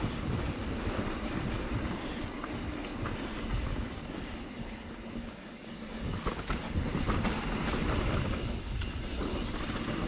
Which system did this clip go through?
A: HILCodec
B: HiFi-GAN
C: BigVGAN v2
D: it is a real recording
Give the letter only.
D